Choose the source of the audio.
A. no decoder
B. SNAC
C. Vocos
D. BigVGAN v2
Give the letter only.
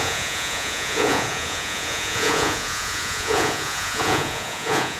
C